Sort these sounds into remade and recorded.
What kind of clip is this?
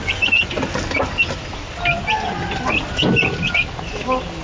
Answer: recorded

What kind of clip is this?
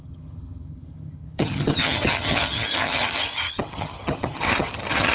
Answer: remade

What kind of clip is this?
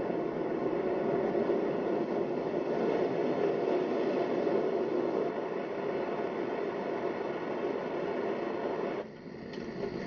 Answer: recorded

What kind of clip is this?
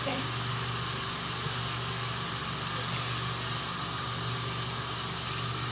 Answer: recorded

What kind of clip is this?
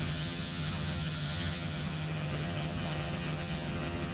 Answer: remade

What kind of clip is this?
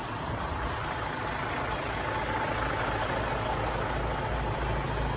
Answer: recorded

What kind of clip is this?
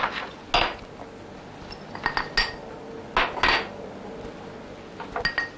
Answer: recorded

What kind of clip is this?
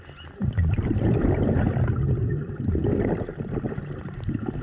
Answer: recorded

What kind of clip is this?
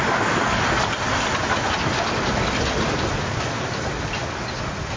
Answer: recorded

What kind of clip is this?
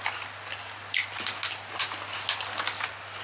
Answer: recorded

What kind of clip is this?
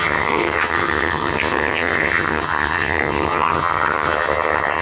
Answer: remade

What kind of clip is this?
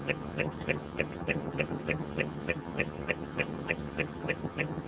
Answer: remade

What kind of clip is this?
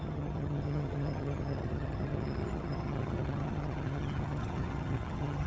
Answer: remade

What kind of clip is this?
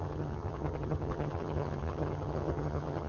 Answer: remade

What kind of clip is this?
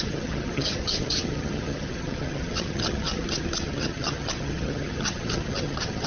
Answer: remade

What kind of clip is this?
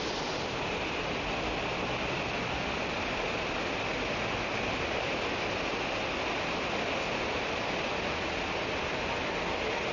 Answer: recorded